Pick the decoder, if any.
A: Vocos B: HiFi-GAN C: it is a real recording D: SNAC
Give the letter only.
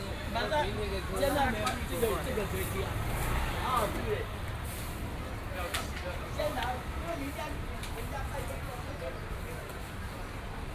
C